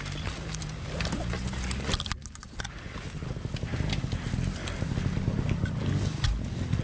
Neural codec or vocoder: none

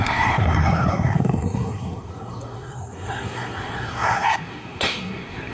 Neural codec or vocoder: codec, SNAC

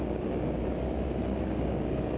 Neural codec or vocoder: codec, DAC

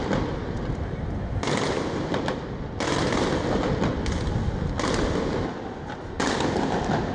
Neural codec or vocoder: none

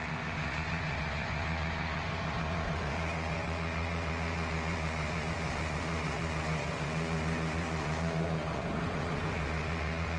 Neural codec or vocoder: vocoder, Vocos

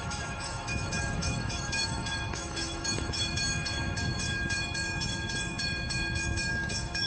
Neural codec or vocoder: autoencoder, DAC-VAE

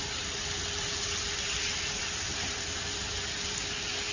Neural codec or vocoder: none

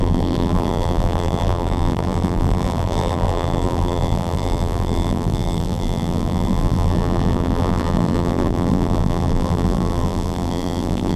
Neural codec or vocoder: vocoder, BigVGAN v2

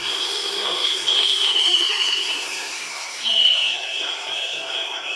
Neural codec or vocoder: codec, SNAC